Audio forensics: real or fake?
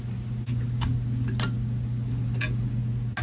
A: real